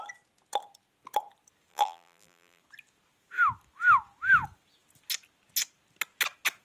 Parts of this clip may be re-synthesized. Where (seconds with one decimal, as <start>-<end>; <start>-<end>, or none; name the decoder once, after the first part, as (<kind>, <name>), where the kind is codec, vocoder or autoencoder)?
1.7-2.6 (vocoder, BigVGAN v2)